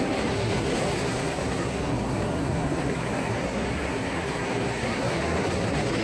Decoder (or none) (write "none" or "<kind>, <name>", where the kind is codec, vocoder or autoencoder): codec, SNAC